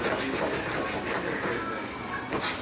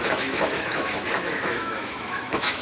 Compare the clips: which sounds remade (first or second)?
second